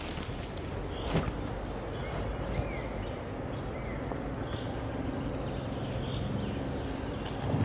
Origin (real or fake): real